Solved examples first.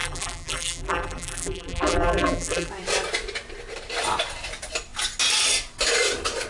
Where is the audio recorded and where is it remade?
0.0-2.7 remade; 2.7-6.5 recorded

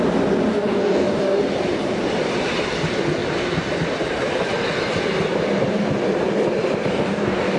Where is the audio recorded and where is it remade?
0.0-0.5 recorded; 0.5-1.4 remade; 1.4-6.9 recorded; 6.9-7.6 remade

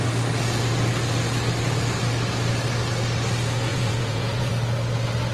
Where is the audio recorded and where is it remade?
0.0-3.7 recorded; 3.7-4.5 remade; 4.5-5.3 recorded